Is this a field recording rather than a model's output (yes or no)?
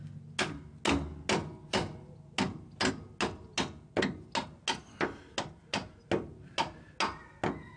yes